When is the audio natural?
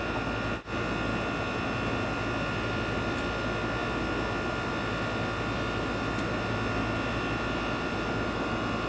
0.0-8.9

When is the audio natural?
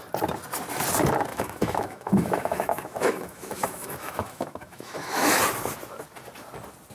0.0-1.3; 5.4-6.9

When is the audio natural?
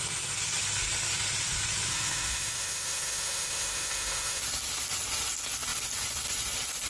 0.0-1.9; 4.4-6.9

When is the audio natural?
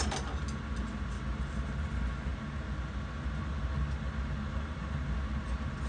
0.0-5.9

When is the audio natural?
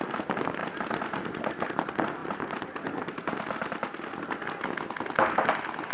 0.0-5.9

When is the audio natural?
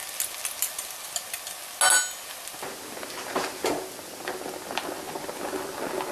0.0-6.1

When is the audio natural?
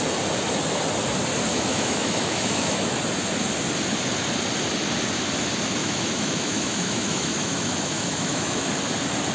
0.0-1.5; 3.0-5.8; 8.7-9.3